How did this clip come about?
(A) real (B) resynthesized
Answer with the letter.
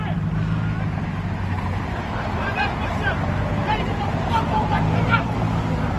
A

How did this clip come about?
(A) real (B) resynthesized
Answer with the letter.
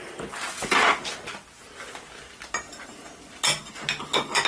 A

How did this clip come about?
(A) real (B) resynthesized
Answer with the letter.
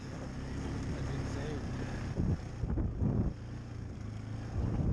A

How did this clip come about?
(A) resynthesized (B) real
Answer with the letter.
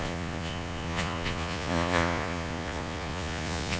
A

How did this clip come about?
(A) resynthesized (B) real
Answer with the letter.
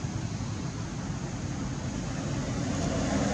B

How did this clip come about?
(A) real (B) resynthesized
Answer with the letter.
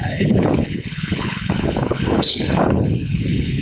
B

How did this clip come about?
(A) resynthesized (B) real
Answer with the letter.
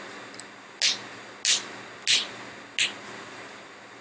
B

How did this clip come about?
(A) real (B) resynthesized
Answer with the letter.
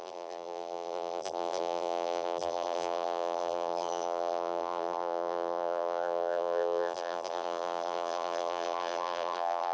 B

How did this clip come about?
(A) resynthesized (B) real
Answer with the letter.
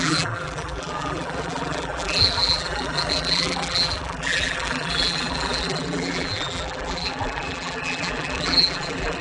A